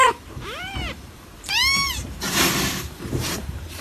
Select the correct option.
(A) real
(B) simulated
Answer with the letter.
B